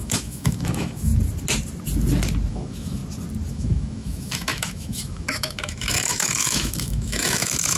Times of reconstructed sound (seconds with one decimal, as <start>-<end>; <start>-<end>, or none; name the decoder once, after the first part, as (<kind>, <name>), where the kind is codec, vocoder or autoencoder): 0.0-1.1 (autoencoder, DAC-VAE); 2.5-3.0; 3.5-7.8